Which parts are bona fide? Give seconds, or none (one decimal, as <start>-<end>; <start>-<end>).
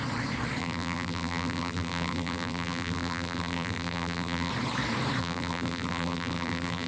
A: 0.0-0.6; 4.5-5.2